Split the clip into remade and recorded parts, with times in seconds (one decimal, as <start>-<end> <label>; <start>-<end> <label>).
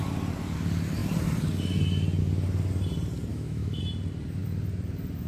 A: 0.0-3.3 recorded; 3.3-3.8 remade; 3.8-5.3 recorded